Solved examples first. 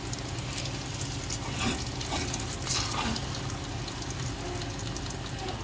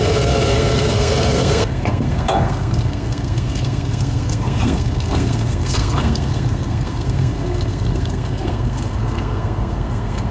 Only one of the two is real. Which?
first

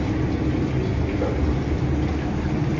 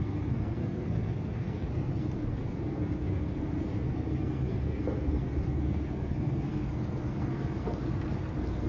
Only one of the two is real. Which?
first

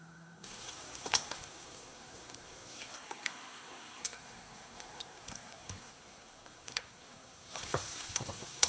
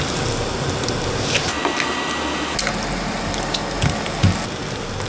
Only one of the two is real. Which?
second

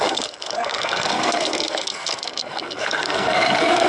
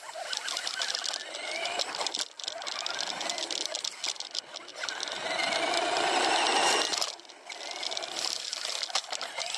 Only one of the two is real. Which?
second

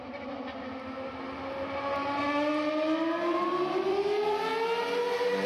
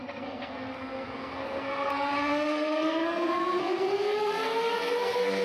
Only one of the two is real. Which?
first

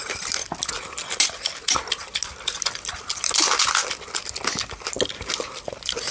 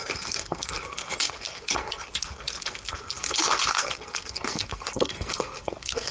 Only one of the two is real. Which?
first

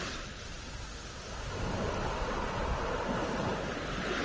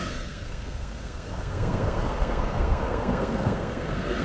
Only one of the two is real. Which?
first